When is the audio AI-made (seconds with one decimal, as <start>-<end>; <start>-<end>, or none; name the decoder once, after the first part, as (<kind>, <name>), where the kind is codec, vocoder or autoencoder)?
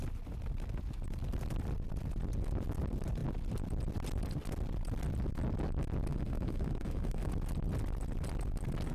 6.1-7.3 (autoencoder, DAC-VAE)